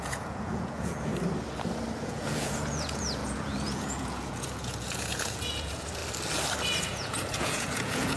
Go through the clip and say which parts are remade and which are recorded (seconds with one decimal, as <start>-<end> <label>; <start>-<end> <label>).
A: 0.0-1.1 remade; 1.1-2.0 recorded; 2.0-6.0 remade; 6.0-6.8 recorded; 6.8-8.2 remade